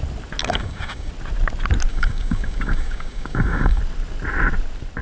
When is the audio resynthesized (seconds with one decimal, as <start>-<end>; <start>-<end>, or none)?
0.4-1.1; 1.9-3.8